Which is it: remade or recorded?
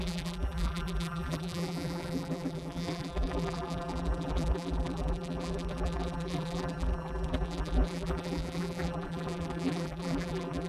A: remade